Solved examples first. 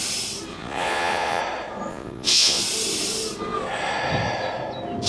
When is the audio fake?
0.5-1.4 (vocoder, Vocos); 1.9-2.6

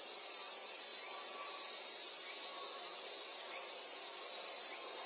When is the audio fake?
none

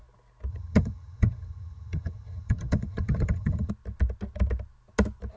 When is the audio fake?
0.5-3.7 (vocoder, HiFi-GAN)

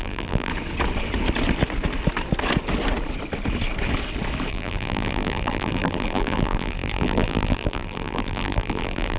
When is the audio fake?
0.0-0.5 (vocoder, BigVGAN v2); 4.5-9.2

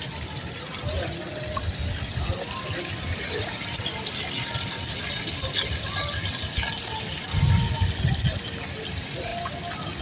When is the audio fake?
none

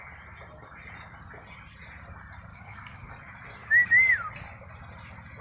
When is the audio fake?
2.5-3.1 (codec, DAC); 3.6-4.1

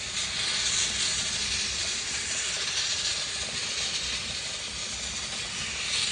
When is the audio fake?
none